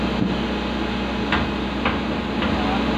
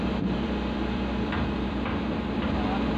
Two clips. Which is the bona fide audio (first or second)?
first